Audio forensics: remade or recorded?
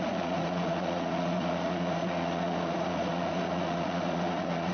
remade